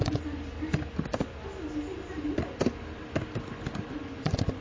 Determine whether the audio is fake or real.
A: fake